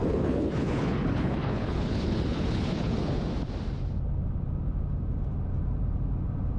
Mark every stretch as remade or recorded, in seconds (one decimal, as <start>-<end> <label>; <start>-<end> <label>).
0.0-3.2 remade; 3.2-6.6 recorded